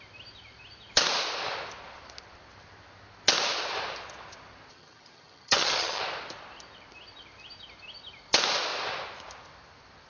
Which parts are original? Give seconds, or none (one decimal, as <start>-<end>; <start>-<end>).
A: 0.0-4.7; 6.0-10.1

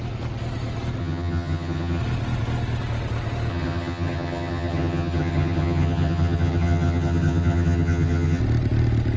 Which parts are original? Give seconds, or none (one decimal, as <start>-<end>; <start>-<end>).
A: 0.0-1.0; 2.0-3.5; 8.4-9.2

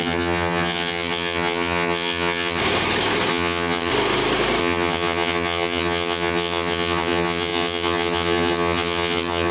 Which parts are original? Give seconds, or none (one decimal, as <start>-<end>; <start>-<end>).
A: 2.6-3.3; 3.9-4.6

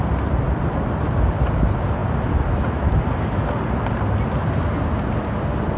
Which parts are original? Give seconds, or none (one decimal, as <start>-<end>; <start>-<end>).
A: 0.0-5.8

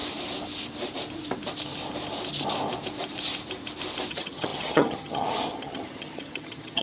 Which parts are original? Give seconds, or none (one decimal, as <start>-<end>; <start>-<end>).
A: 0.0-4.1

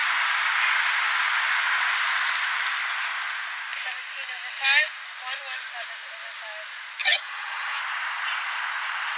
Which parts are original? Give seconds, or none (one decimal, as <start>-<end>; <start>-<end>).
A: 0.0-7.0; 7.8-9.2

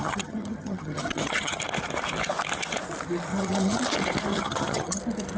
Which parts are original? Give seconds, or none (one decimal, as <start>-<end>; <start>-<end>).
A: 1.6-3.3; 3.8-4.3; 5.0-5.4

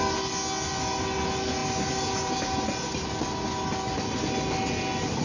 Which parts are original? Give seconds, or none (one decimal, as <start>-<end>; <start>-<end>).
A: 0.0-5.2